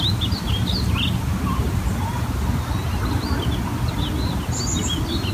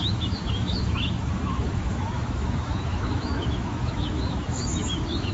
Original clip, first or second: first